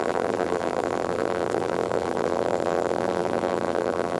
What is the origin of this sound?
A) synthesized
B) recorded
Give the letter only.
A